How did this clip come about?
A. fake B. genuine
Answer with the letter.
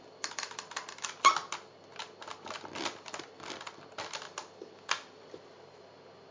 B